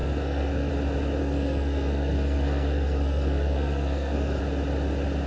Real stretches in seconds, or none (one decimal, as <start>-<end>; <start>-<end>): 0.7-1.2; 4.4-5.3